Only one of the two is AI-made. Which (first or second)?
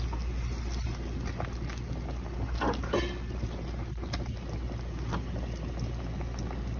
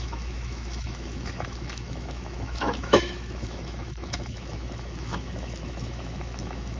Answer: second